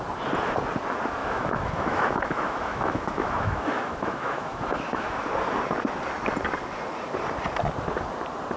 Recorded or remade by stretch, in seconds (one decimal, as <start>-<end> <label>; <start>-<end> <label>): 0.0-1.2 recorded; 1.2-5.2 remade; 5.2-8.6 recorded

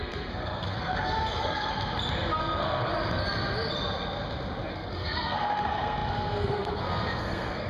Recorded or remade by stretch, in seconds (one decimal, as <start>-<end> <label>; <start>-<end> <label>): 0.0-1.7 remade; 1.7-2.4 recorded; 2.4-2.9 remade; 2.9-4.7 recorded; 4.7-7.7 remade

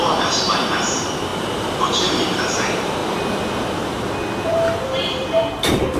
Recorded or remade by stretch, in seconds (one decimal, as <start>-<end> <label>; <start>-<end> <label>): 0.0-3.0 remade; 3.0-4.4 recorded; 4.4-6.0 remade

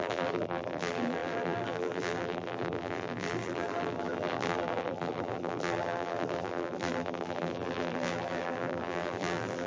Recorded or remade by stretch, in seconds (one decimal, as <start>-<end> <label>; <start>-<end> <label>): 0.0-9.7 remade

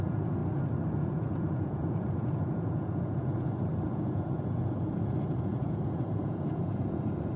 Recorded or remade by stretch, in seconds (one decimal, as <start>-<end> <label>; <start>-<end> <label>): 0.0-0.4 remade; 0.4-1.0 recorded; 1.0-7.4 remade

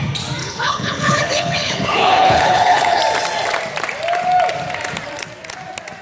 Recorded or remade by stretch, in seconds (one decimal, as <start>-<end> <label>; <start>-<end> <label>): 0.0-0.4 recorded; 0.4-3.0 remade; 3.0-6.0 recorded

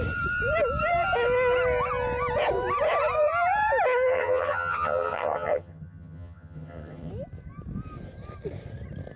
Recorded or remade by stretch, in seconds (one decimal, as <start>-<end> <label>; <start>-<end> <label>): 0.0-4.1 recorded; 4.1-7.1 remade; 7.1-9.2 recorded